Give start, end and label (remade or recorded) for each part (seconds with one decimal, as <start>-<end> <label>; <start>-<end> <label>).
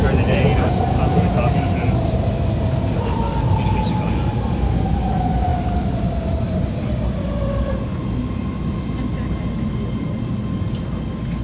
0.0-5.5 recorded; 5.5-7.7 remade; 7.7-11.4 recorded